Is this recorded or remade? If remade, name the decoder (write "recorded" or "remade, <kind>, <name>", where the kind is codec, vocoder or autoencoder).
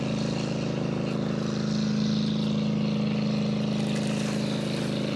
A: recorded